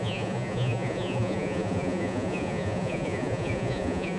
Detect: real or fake fake